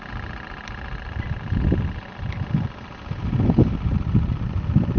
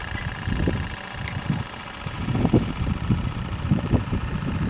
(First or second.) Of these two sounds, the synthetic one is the second